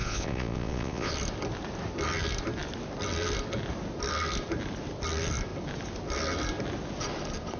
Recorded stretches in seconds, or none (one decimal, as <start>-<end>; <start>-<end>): 1.1-7.6